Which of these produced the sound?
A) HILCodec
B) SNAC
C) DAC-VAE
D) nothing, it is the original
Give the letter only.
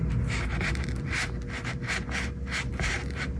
D